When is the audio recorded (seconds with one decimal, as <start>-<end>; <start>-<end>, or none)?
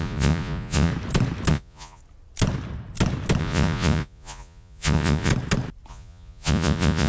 0.9-1.5; 2.0-3.4; 5.3-5.9